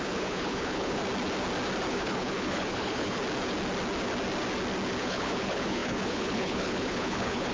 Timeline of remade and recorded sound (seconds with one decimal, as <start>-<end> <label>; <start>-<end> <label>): 0.0-1.0 remade; 1.0-1.9 recorded; 1.9-3.2 remade; 3.2-5.0 recorded; 5.0-7.5 remade